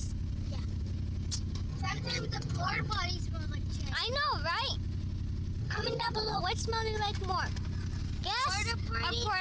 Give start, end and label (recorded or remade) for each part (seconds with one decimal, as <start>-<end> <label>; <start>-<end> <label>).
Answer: 0.0-1.7 recorded; 1.7-2.9 remade; 2.9-5.6 recorded; 5.6-6.4 remade; 6.4-9.4 recorded